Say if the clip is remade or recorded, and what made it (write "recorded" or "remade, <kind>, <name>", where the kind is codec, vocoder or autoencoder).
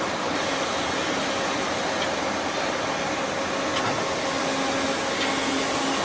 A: recorded